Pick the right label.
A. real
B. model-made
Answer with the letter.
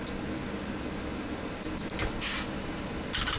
A